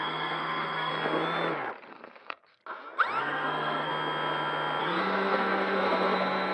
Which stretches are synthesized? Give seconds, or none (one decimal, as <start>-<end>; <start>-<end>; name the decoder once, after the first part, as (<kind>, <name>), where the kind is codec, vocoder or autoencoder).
0.0-0.9 (codec, SNAC); 1.9-2.6; 3.2-3.9; 4.8-6.5